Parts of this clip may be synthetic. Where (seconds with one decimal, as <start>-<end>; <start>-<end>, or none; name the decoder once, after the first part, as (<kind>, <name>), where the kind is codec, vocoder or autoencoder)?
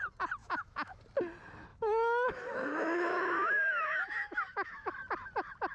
0.4-1.0 (autoencoder, DAC-VAE); 1.7-4.9